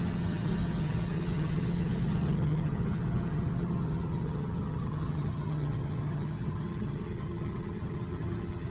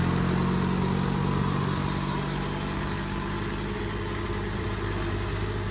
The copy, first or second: first